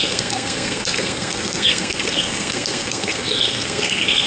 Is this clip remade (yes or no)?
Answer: yes